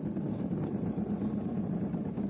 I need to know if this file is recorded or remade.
recorded